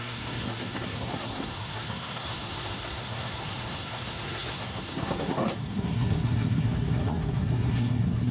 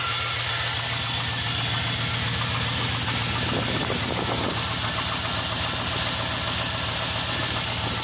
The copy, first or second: first